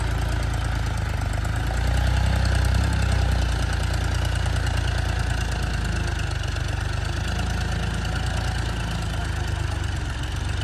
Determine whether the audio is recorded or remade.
recorded